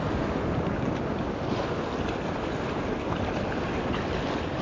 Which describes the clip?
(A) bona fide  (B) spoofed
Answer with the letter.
A